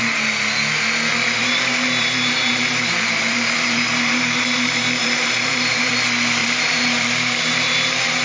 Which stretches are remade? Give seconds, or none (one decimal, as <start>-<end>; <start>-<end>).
1.1-5.9; 6.4-8.2